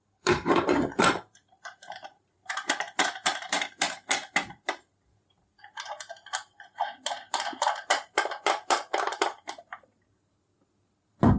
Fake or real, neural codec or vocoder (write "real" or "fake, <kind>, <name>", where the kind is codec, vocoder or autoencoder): fake, vocoder, BigVGAN v2